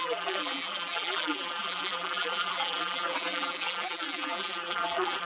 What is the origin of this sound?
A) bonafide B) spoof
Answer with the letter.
B